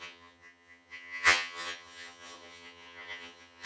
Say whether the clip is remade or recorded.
remade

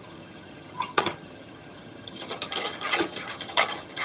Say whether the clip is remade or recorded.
remade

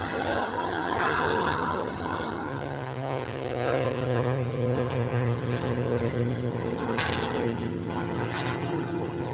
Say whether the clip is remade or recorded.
remade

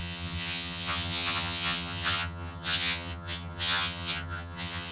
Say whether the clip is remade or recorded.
remade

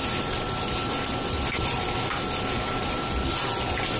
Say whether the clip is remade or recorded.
recorded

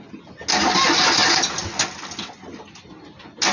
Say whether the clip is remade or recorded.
recorded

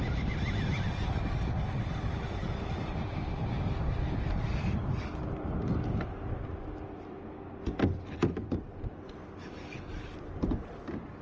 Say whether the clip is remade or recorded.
recorded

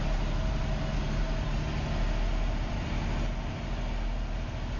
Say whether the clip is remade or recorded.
recorded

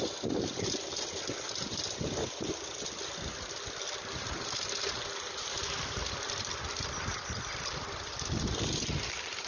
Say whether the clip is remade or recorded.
recorded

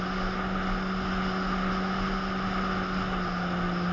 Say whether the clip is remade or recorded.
recorded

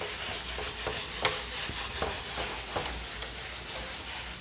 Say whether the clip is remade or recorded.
recorded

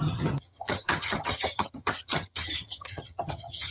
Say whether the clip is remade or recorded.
remade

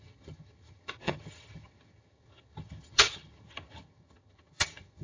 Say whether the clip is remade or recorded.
remade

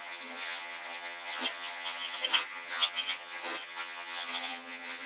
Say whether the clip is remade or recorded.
remade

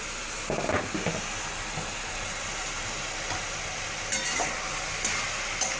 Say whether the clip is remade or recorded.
recorded